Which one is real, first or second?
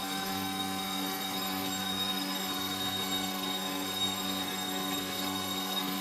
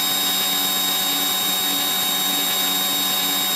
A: second